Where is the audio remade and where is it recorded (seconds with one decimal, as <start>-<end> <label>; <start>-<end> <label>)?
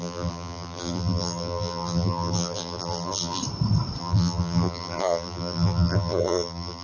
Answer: 0.0-3.4 remade; 3.4-4.0 recorded; 4.0-6.8 remade